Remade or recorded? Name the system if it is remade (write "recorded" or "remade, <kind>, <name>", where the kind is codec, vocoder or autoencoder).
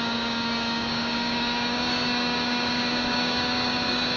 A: remade, codec, DAC